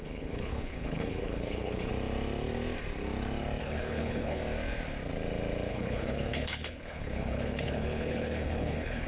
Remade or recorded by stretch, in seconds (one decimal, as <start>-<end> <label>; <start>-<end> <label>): 0.0-1.9 remade; 1.9-3.6 recorded; 3.6-4.4 remade; 4.4-5.7 recorded; 5.7-9.1 remade